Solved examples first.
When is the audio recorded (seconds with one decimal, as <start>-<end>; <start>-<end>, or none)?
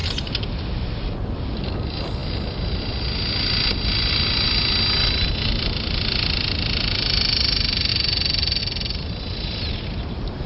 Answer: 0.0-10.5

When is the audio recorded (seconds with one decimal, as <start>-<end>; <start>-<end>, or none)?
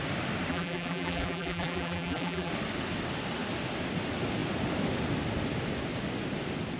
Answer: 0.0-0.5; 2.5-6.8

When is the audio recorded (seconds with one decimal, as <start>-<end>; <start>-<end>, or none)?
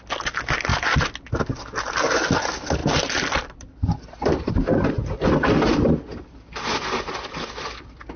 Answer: 0.0-8.2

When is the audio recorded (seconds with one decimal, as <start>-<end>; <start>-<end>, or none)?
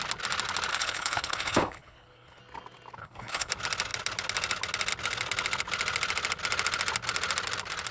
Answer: 0.0-0.7; 2.4-3.0; 3.5-7.9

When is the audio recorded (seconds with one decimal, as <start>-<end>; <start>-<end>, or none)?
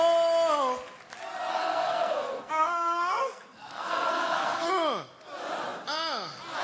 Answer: 0.0-1.5; 4.7-6.6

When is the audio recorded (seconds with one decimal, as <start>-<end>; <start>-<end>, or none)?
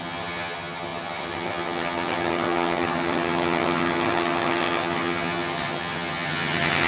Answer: none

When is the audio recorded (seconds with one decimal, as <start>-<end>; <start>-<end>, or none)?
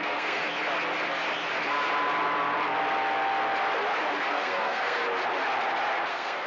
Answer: 0.4-4.3; 5.0-6.1